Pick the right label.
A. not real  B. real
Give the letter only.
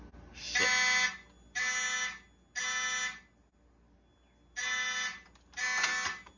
B